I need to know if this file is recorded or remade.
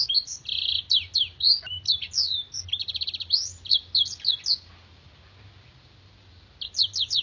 recorded